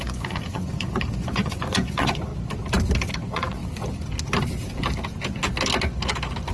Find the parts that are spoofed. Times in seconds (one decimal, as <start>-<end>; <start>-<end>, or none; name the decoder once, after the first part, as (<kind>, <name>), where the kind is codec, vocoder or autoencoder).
0.0-2.3 (vocoder, Vocos); 3.1-3.6